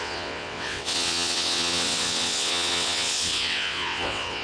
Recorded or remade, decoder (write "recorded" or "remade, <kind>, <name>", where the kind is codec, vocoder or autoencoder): remade, vocoder, WaveNeXt